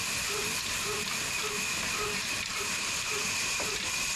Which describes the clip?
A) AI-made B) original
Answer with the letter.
A